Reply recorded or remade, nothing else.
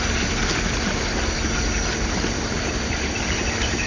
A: recorded